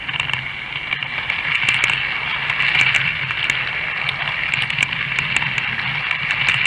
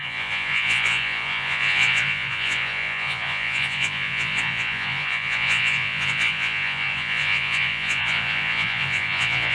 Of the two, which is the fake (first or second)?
second